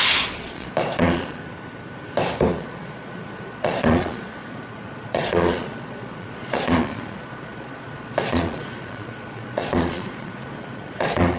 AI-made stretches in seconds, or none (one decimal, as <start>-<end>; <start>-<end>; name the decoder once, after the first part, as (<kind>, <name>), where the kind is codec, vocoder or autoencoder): 0.0-1.4 (vocoder, Vocos); 2.5-11.4